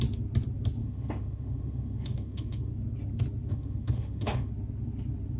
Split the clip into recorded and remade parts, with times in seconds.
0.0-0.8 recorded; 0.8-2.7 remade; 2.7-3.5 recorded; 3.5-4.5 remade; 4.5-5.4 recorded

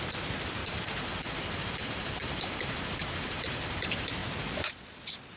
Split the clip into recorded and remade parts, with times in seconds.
0.0-0.6 recorded; 0.6-3.8 remade; 3.8-5.4 recorded

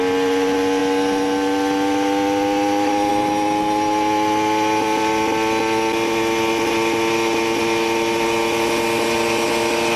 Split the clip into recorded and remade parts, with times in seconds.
0.0-10.0 recorded